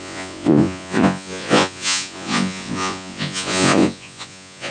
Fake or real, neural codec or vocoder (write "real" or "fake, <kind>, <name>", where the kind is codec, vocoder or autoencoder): fake, vocoder, Vocos